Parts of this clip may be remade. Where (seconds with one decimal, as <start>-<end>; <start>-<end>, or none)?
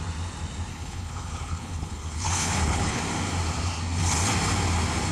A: 0.7-3.0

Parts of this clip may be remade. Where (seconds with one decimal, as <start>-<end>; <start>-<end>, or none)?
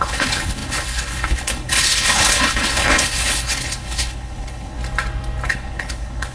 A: 0.0-4.8; 5.5-6.3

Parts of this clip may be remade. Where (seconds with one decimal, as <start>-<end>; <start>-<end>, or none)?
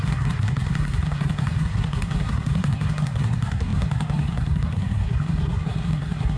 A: 0.0-6.4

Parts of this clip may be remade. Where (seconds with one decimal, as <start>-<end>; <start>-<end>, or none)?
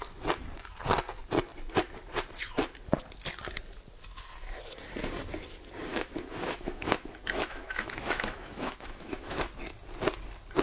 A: 5.9-9.4